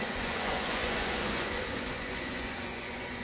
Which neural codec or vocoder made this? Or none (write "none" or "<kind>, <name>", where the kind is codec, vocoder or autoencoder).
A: vocoder, Vocos